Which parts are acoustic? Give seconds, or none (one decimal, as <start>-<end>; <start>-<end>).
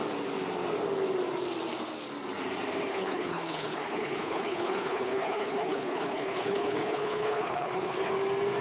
0.0-2.9; 8.1-8.6